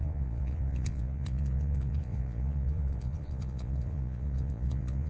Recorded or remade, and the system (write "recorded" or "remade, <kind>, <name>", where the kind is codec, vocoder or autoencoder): remade, vocoder, Vocos